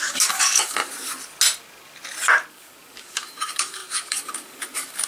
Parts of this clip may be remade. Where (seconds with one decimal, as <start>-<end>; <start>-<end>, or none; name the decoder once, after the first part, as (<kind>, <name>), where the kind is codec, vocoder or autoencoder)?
0.0-0.8 (codec, DAC); 2.5-5.1